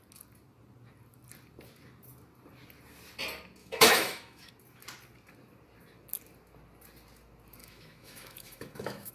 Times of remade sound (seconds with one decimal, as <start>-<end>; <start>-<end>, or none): 3.6-4.5; 7.6-9.1

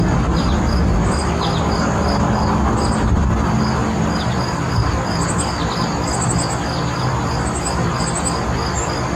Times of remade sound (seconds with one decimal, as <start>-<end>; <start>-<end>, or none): 3.8-4.3